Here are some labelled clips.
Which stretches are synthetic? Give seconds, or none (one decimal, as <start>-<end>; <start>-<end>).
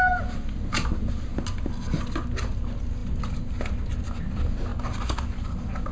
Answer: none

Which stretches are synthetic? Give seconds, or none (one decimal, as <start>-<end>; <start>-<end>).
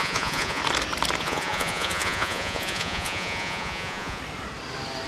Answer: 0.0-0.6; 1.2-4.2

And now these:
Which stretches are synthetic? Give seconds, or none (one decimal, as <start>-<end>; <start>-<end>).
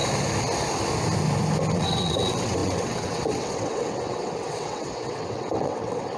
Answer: 1.7-6.2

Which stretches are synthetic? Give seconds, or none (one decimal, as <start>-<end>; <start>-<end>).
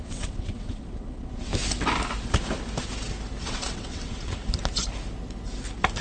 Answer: 0.0-1.5; 3.4-4.4